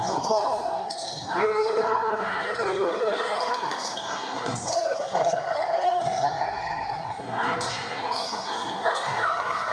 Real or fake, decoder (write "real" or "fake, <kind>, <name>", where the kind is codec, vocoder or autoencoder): fake, codec, SNAC